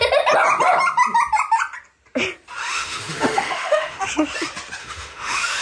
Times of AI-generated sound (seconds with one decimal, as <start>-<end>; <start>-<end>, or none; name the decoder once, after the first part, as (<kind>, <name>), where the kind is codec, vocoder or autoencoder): 2.6-4.1 (autoencoder, DAC-VAE); 4.8-5.6